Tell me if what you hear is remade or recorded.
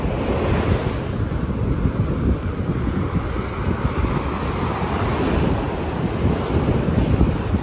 recorded